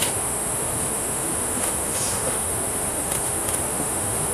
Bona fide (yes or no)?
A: no